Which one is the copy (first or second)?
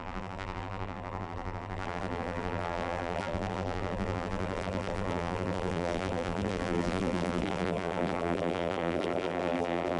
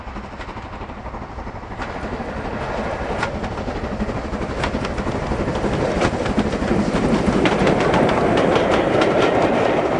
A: first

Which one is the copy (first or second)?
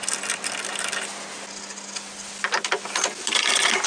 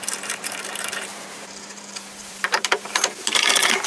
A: second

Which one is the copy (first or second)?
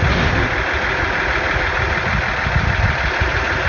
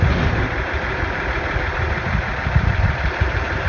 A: second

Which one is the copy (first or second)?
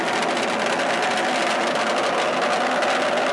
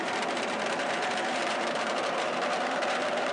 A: second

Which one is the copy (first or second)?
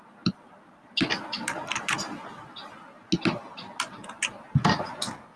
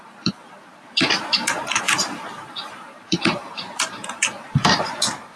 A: second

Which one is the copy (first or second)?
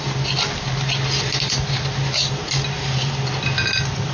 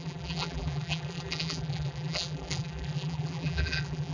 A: second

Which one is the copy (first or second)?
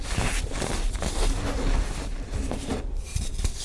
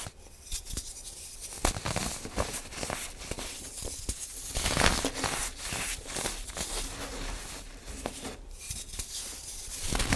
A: first